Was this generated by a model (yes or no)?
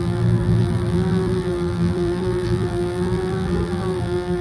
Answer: yes